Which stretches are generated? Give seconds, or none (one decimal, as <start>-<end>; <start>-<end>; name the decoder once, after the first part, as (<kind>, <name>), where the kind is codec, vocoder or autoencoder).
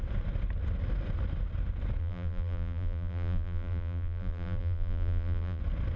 2.0-5.6 (vocoder, BigVGAN v2)